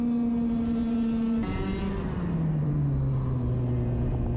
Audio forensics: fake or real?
real